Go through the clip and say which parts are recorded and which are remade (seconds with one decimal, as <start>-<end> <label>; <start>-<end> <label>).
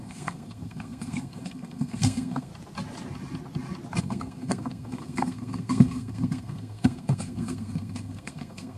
0.0-2.5 remade; 2.5-4.0 recorded; 4.0-8.8 remade